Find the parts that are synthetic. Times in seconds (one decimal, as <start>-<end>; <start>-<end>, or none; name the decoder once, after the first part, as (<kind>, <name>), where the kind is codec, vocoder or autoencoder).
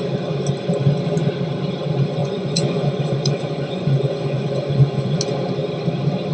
2.2-5.2 (vocoder, Vocos)